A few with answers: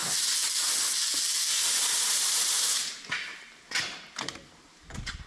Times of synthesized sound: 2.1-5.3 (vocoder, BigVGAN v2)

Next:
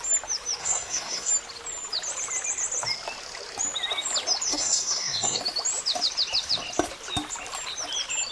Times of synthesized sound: 0.6-1.3 (codec, SNAC); 4.5-5.4